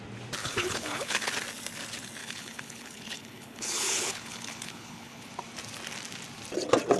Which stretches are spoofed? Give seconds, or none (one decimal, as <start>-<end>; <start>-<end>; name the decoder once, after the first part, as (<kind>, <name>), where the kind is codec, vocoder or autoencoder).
0.4-1.3 (codec, HILCodec); 2.2-5.3